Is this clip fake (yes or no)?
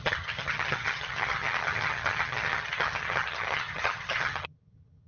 yes